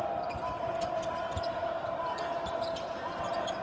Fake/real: real